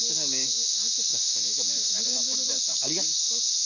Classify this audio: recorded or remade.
remade